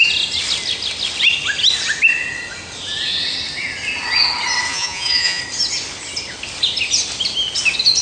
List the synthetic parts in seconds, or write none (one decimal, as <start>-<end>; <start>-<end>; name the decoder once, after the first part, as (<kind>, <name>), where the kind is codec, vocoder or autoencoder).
4.7-5.4 (vocoder, Vocos)